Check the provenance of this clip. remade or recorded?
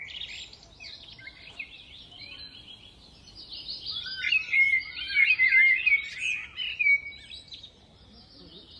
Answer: recorded